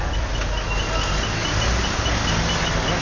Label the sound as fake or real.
real